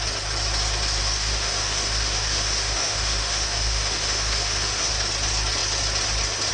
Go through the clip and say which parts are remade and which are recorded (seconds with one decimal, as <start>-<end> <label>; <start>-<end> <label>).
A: 0.0-1.0 recorded; 1.0-4.9 remade; 4.9-6.5 recorded